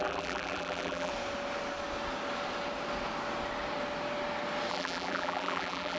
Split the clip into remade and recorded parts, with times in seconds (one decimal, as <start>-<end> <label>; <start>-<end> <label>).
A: 0.0-1.1 remade; 1.1-4.7 recorded; 4.7-6.0 remade